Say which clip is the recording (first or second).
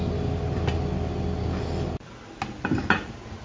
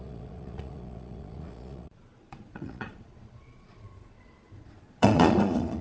first